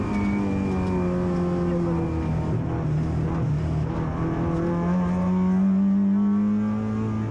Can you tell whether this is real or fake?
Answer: real